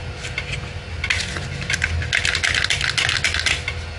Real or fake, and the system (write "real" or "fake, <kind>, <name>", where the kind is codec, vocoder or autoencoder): real